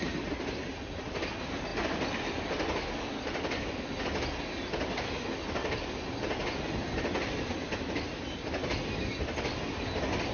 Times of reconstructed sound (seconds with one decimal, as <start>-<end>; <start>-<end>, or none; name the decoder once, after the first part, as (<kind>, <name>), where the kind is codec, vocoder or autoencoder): none